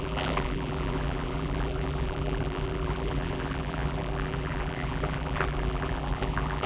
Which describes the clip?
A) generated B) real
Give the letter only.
A